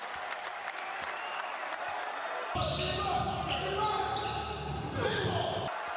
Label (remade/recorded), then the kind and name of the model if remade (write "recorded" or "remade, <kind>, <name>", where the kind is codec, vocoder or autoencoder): recorded